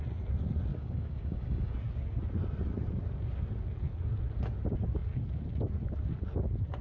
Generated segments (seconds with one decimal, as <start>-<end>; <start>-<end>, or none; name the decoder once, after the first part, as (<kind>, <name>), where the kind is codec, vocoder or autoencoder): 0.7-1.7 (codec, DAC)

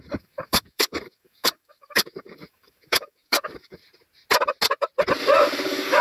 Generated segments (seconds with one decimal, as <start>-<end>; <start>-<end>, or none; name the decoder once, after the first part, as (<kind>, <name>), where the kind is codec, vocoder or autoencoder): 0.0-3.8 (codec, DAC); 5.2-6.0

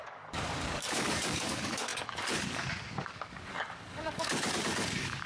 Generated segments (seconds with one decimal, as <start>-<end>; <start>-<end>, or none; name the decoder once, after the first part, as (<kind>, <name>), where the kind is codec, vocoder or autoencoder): 0.0-5.3 (codec, DAC)

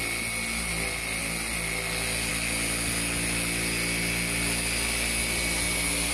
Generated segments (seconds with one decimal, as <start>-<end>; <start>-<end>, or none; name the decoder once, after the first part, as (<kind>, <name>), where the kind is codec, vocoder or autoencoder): none